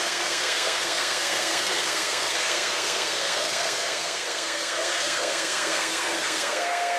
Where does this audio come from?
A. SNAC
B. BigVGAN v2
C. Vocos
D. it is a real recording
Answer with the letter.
A